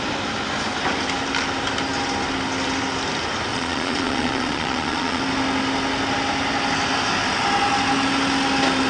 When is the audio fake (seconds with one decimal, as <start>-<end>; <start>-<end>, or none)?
3.5-5.2